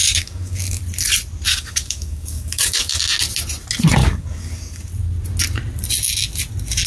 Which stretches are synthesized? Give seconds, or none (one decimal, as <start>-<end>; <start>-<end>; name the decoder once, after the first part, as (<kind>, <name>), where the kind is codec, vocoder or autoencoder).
0.0-0.8 (codec, DAC); 1.5-3.0; 4.0-4.8